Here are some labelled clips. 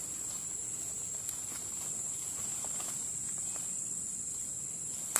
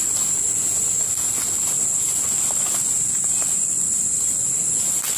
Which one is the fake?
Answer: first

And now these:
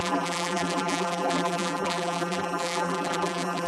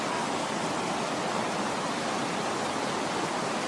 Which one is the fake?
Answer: first